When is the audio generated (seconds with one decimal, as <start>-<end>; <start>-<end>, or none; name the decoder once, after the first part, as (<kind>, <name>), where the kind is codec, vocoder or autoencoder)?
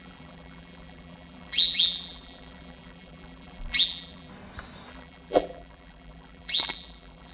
0.0-4.3 (vocoder, BigVGAN v2); 4.9-7.3